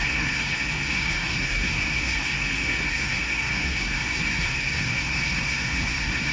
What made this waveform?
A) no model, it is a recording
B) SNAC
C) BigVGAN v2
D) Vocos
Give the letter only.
B